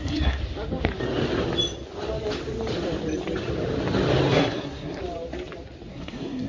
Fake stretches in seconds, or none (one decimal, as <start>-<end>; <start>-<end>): 0.0-0.4; 4.3-5.0; 5.9-6.5